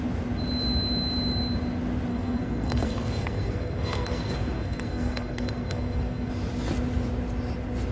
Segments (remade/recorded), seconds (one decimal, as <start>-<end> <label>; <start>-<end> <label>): 0.0-2.1 recorded; 2.1-6.3 remade; 6.3-7.9 recorded